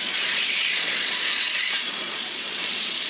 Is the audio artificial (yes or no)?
yes